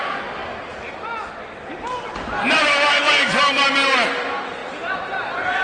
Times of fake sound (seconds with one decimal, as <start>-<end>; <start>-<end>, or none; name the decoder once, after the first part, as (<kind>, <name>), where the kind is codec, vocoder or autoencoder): 4.6-5.6 (vocoder, BigVGAN v2)